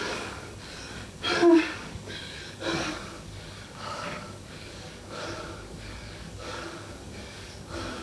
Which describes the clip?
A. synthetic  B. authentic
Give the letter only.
A